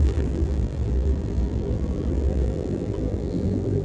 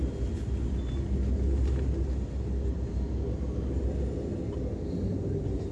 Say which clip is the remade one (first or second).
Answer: first